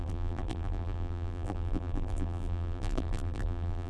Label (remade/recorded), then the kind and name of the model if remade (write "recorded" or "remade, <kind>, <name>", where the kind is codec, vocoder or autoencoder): remade, vocoder, BigVGAN v2